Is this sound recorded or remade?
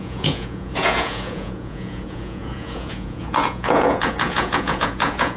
remade